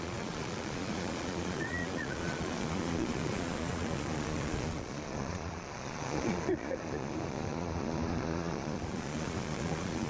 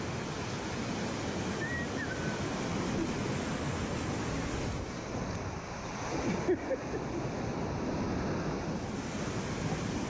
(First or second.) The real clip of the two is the second